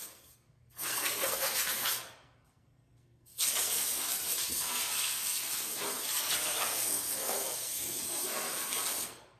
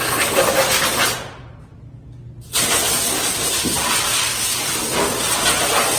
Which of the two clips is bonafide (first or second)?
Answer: second